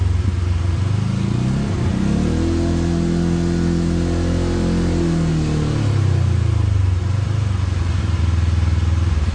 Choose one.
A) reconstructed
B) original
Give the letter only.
B